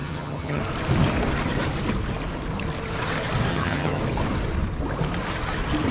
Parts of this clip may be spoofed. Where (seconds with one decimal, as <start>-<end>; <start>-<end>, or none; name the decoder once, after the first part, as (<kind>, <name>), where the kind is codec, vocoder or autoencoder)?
0.0-0.6 (vocoder, HiFi-GAN); 3.5-4.0